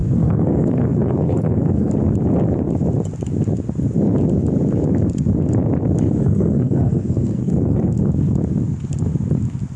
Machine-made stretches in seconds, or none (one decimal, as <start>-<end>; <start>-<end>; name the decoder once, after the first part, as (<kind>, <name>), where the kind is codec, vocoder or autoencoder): 0.0-1.9 (codec, SNAC); 6.2-8.0